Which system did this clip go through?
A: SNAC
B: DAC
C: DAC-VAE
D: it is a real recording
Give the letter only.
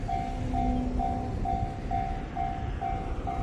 D